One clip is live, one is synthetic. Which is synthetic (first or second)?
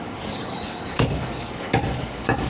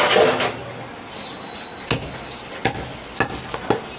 first